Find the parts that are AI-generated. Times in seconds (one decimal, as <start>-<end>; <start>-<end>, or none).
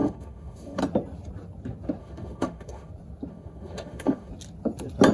0.0-0.8; 2.0-2.9; 3.3-4.3